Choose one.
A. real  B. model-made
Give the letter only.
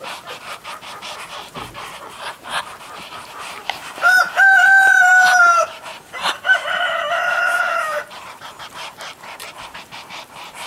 B